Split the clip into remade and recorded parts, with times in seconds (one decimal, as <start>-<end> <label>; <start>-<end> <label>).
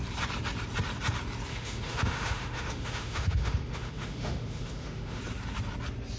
0.0-1.5 recorded; 1.5-5.2 remade; 5.2-6.2 recorded